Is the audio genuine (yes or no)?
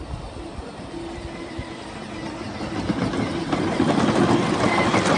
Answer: yes